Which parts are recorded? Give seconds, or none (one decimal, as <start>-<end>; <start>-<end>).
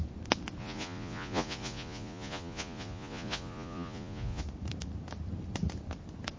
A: 0.0-0.6; 4.4-6.4